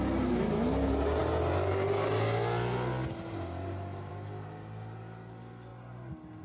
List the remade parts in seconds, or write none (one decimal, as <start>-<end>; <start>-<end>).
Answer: none